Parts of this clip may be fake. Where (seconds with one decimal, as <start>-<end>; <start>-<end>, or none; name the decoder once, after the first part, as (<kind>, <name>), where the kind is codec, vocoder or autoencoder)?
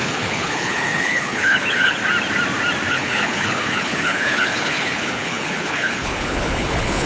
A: 0.0-2.0 (codec, HILCodec); 2.9-7.1